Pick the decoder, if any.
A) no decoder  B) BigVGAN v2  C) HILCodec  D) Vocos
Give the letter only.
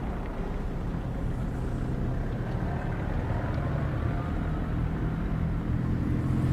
A